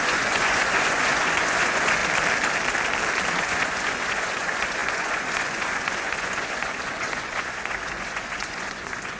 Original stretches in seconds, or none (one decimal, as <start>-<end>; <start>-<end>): 2.0-3.3